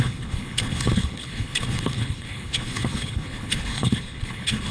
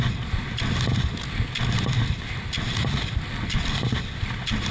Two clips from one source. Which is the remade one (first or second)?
first